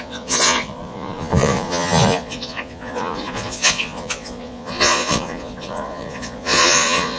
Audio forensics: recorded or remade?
remade